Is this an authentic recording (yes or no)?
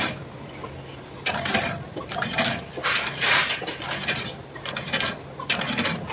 yes